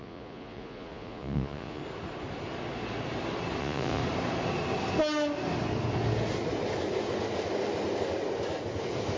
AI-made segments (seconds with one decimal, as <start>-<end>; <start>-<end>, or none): 0.0-1.8; 3.6-4.0